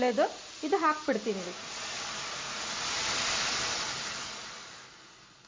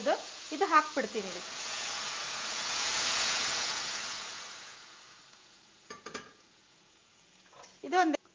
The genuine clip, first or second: first